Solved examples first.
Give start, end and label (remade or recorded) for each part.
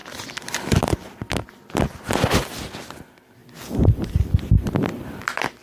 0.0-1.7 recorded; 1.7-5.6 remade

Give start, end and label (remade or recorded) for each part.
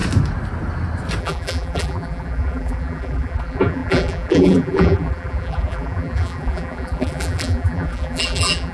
0.0-1.2 recorded; 1.2-8.7 remade